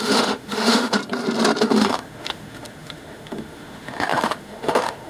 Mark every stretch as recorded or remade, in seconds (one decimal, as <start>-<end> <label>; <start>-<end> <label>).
0.0-1.0 remade; 1.0-1.6 recorded; 1.6-5.1 remade